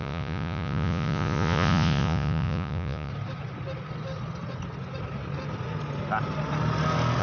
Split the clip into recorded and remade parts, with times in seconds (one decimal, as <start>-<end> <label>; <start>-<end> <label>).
0.0-3.1 remade; 3.1-7.2 recorded